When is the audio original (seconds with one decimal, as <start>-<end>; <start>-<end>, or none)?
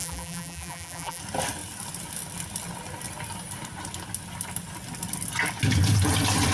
1.2-6.5